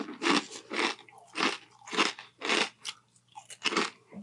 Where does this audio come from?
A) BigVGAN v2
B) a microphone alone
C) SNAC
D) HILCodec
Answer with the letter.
B